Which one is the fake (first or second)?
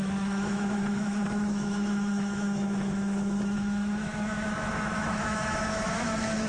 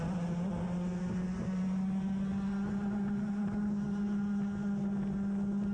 first